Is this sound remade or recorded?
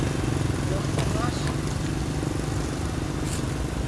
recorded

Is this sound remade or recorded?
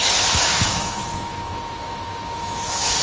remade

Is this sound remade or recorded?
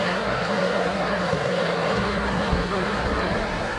remade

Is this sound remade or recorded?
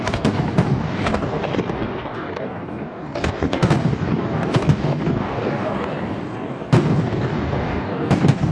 remade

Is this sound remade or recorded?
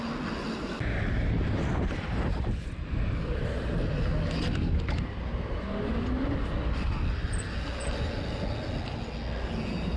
recorded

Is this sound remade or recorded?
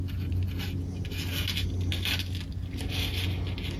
recorded